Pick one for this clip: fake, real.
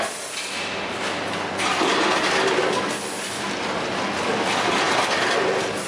real